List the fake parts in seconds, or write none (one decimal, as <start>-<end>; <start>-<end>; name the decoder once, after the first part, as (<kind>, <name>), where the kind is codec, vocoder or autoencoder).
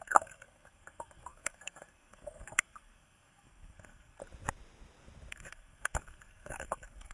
0.0-4.2 (codec, SNAC); 5.3-7.1